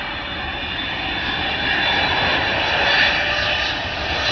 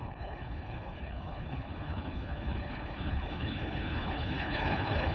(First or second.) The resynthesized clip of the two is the second